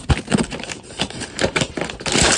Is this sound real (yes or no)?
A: yes